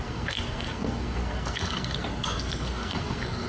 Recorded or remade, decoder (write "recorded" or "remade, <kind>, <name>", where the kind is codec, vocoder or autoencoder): remade, codec, SNAC